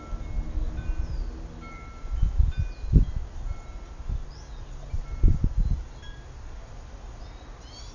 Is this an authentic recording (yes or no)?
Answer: yes